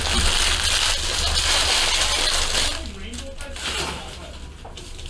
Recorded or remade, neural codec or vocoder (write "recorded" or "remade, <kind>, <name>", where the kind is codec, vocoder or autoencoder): recorded